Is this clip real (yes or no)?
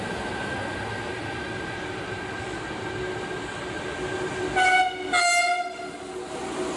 yes